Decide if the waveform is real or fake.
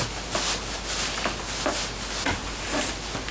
real